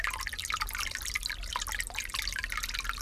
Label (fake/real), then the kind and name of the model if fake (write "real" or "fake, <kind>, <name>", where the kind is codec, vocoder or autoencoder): real